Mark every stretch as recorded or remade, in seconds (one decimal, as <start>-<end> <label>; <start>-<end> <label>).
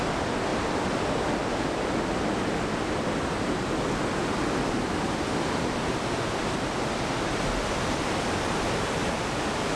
0.0-9.8 recorded